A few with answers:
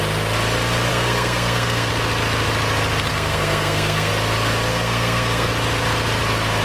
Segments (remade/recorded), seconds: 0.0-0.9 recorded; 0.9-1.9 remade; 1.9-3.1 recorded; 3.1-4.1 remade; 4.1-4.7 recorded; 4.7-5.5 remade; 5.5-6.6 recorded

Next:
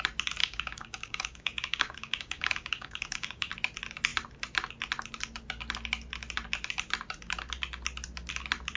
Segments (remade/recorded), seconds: 0.0-0.4 recorded; 0.4-3.5 remade; 3.5-8.8 recorded

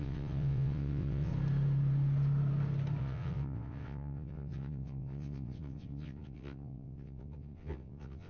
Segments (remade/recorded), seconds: 0.0-1.3 remade; 1.3-3.0 recorded; 3.0-8.3 remade

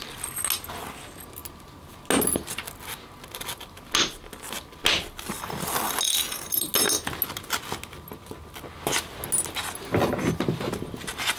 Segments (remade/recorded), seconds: 0.0-11.4 recorded

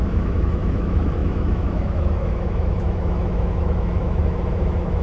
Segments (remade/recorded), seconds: 0.0-5.0 remade

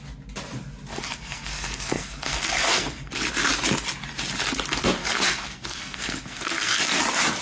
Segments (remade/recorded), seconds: 0.0-0.9 recorded; 0.9-3.1 remade; 3.1-5.0 recorded; 5.0-7.0 remade; 7.0-7.4 recorded